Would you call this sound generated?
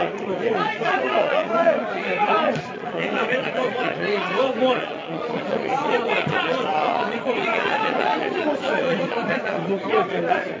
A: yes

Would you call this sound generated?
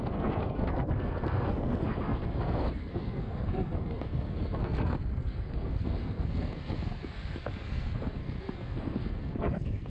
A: yes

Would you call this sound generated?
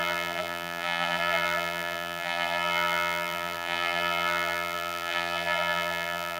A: yes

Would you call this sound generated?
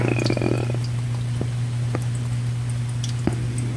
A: no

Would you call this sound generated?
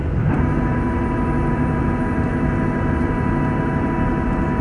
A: no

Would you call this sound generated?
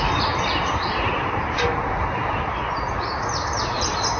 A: no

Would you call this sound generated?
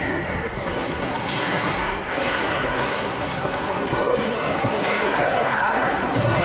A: yes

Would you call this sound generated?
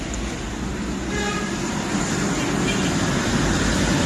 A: no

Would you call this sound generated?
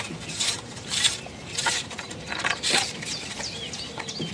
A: no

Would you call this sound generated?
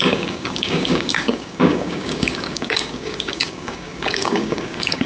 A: yes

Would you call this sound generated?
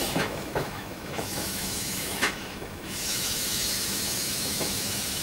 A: yes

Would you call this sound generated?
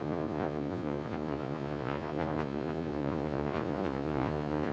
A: yes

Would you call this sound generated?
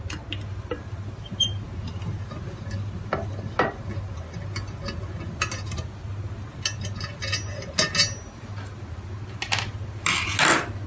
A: no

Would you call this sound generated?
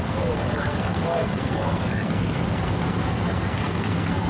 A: yes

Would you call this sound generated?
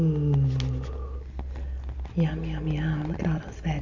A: no